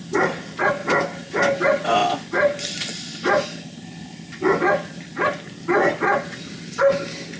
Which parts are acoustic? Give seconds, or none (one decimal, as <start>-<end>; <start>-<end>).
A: 0.0-0.8; 1.3-7.4